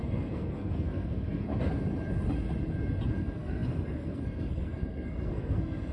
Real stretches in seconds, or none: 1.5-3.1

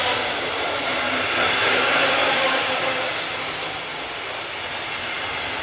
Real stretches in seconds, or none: 0.0-1.6; 3.1-5.6

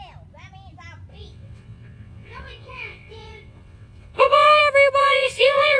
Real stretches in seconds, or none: 0.0-1.1; 4.6-5.0

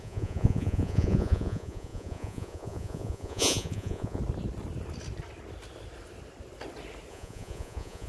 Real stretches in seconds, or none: 4.2-7.1

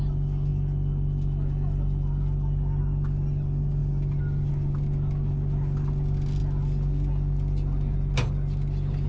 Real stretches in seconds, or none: 0.0-9.1